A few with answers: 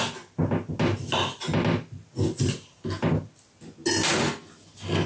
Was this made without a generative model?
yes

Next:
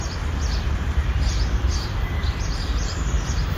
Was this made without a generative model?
no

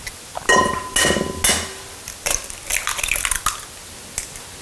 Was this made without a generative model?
yes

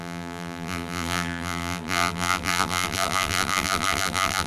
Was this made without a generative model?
no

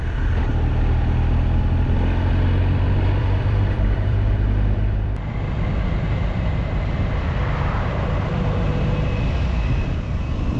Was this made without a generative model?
no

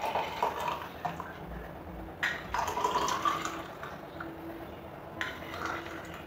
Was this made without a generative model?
yes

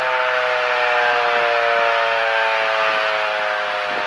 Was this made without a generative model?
yes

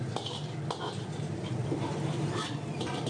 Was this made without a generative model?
no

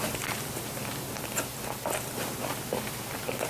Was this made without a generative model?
no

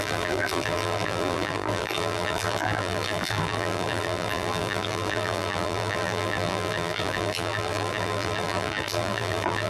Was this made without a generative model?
no